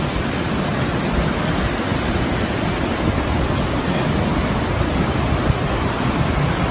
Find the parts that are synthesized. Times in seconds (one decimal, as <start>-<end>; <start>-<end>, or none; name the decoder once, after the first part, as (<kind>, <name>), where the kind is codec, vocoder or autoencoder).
none